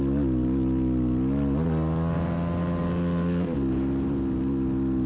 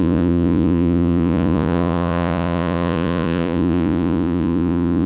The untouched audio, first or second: first